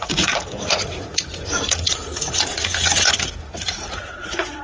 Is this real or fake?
fake